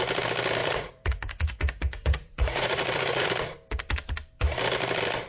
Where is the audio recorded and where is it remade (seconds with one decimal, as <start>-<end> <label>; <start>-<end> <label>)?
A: 0.0-0.6 recorded; 0.6-3.3 remade; 3.3-5.3 recorded